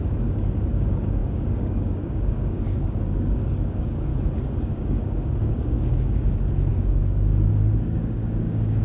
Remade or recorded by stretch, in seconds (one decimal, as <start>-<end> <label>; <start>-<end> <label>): 0.0-4.1 remade; 4.1-4.6 recorded; 4.6-8.8 remade